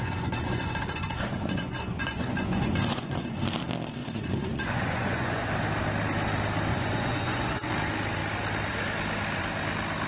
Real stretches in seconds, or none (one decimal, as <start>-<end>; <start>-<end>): 3.3-4.0; 5.5-6.7; 7.7-10.1